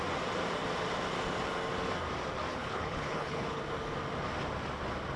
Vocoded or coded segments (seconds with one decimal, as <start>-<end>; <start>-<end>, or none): 2.5-3.6